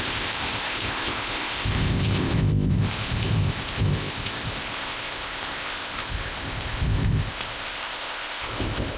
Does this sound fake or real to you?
fake